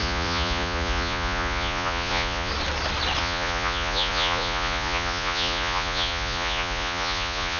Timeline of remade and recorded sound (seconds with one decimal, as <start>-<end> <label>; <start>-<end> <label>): 0.0-2.5 remade; 2.5-3.2 recorded; 3.2-7.6 remade